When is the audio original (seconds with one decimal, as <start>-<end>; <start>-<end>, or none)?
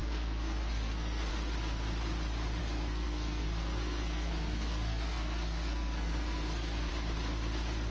1.3-2.6; 6.9-7.9